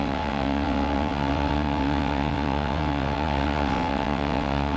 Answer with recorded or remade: remade